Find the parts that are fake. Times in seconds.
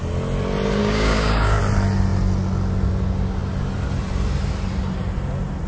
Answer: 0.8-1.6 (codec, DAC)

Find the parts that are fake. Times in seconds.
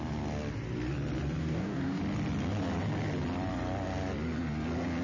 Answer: 1.4-2.0 (codec, DAC)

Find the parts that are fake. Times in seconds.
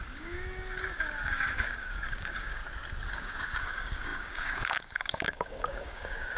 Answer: 0.0-2.6 (codec, DAC); 3.1-6.4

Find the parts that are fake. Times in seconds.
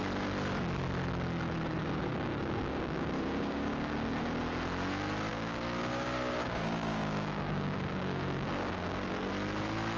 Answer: 2.1-4.1 (codec, DAC); 5.3-9.3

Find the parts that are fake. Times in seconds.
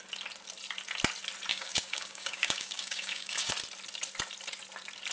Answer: 1.5-3.5 (codec, DAC)